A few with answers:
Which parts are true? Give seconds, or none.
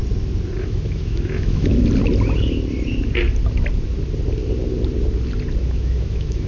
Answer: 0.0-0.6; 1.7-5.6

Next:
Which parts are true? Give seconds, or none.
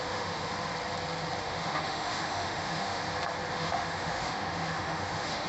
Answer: 0.5-1.4; 3.0-3.5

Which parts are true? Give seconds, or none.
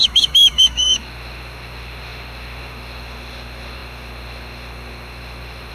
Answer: none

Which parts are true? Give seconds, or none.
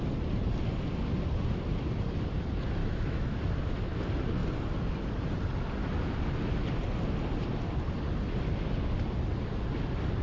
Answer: 0.0-2.8; 3.7-10.2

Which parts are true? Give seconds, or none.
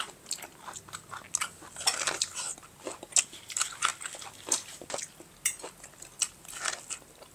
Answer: 0.0-7.3